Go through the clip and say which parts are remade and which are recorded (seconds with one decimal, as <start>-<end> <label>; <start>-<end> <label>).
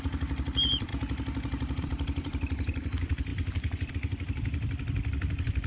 0.0-0.9 remade; 0.9-1.8 recorded; 1.8-5.7 remade